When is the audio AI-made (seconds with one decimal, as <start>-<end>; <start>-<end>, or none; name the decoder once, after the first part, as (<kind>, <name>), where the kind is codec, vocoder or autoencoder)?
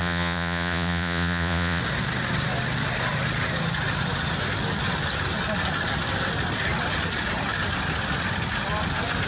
0.0-1.8 (vocoder, Vocos)